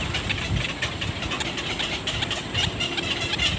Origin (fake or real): real